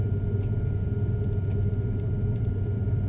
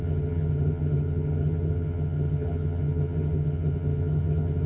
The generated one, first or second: second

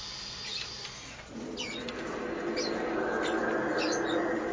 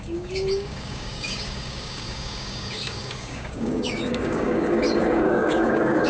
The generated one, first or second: second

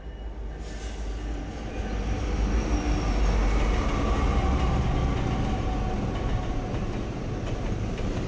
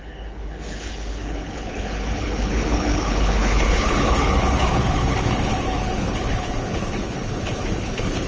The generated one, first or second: second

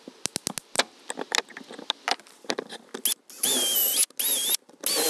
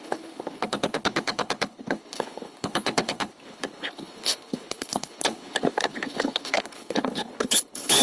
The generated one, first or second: second